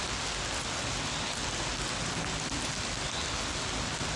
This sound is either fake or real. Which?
real